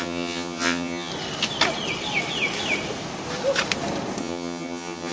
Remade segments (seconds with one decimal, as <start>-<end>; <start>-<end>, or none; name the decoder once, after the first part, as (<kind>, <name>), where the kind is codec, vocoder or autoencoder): 0.0-1.1 (vocoder, HiFi-GAN); 4.2-5.1